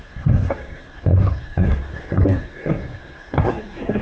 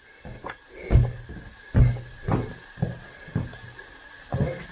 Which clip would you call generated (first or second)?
first